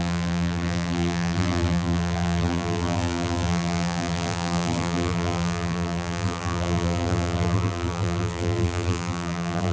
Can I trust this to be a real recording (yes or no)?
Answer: no